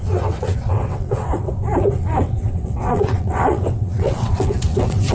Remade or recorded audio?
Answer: remade